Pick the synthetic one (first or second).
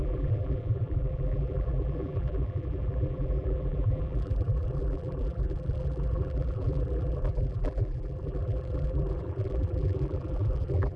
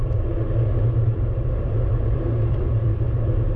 first